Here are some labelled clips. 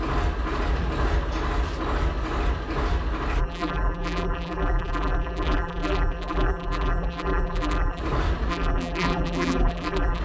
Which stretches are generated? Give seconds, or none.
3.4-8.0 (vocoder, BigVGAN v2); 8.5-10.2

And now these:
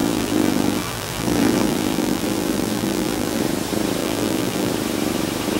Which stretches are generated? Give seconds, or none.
0.0-3.4 (vocoder, BigVGAN v2); 4.0-4.7

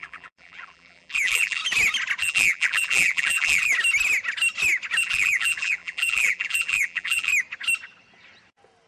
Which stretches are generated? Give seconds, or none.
0.0-1.6 (vocoder, BigVGAN v2); 2.2-3.7; 5.0-7.3

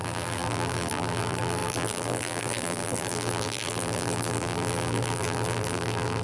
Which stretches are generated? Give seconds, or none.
0.0-6.2 (vocoder, BigVGAN v2)